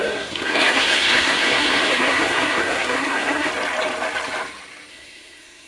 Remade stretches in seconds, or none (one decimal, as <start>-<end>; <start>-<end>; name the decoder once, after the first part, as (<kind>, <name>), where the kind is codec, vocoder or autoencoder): 0.0-3.5 (codec, SNAC); 4.9-5.7